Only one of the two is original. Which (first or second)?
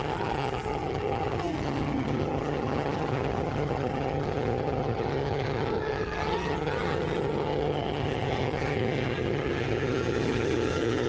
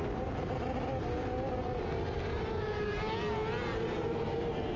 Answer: second